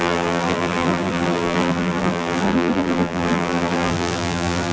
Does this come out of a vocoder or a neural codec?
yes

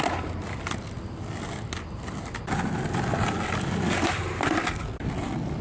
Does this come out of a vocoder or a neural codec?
no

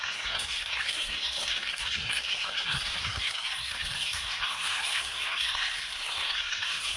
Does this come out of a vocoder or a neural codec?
yes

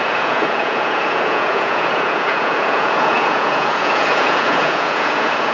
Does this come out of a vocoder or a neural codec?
yes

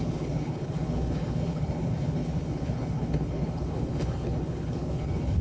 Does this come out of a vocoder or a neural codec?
yes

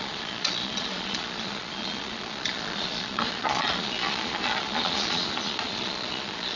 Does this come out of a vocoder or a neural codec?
yes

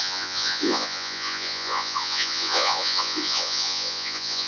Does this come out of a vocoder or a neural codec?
yes